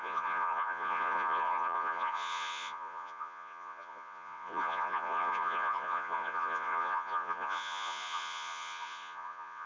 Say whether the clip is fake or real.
fake